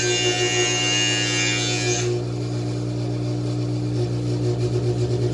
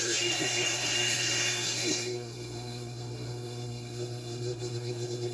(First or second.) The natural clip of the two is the first